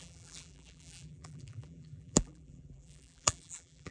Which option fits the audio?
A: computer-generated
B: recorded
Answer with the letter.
A